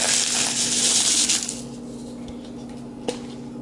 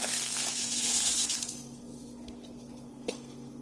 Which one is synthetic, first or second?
second